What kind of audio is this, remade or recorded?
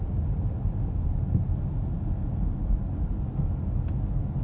recorded